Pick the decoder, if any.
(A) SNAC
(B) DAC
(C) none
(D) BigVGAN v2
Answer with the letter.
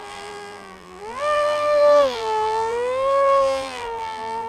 D